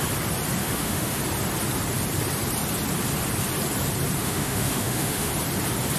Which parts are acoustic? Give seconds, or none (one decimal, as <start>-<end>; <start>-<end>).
0.0-0.6; 1.2-4.2; 5.3-6.0